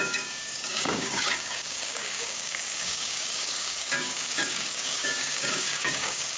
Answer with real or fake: fake